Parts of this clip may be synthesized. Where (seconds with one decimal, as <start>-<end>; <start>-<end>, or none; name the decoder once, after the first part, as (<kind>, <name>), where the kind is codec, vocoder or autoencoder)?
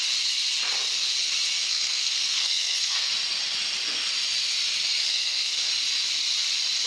1.6-3.1 (codec, SNAC); 5.0-5.7